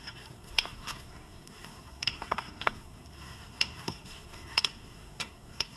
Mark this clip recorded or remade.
remade